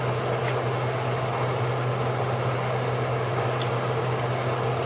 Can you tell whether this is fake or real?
real